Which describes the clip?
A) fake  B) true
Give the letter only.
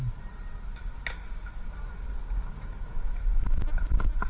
B